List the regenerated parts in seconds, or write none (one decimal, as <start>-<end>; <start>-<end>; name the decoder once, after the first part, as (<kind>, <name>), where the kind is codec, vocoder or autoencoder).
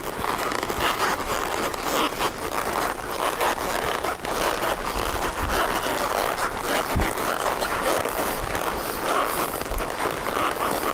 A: none